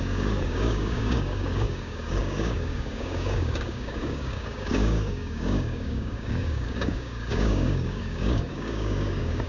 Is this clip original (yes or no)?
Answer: no